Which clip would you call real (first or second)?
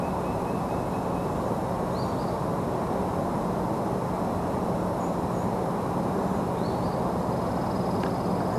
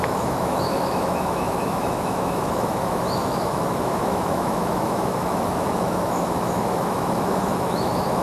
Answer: first